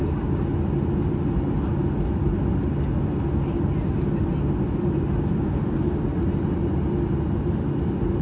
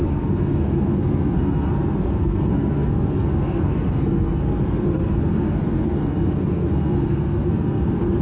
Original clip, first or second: first